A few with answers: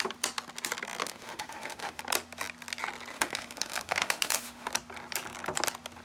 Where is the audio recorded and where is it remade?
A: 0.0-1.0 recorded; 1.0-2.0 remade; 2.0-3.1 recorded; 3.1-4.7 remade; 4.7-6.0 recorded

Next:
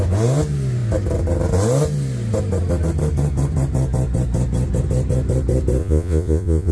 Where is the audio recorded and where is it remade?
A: 0.0-5.8 recorded; 5.8-6.7 remade

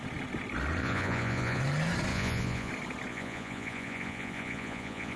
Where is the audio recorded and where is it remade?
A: 0.0-0.8 recorded; 0.8-1.6 remade; 1.6-2.1 recorded; 2.1-2.7 remade; 2.7-3.1 recorded; 3.1-5.2 remade

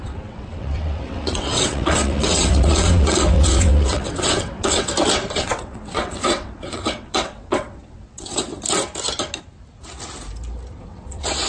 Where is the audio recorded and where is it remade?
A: 0.0-4.9 remade; 4.9-5.4 recorded; 5.4-8.5 remade; 8.5-10.8 recorded; 10.8-11.5 remade

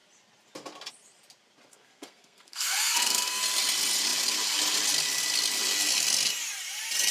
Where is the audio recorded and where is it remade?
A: 0.0-1.7 recorded; 1.7-3.4 remade; 3.4-7.1 recorded